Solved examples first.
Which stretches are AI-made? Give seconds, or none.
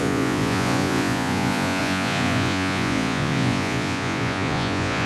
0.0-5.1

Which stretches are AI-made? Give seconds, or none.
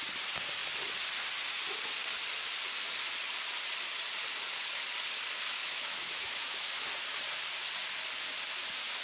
5.6-6.9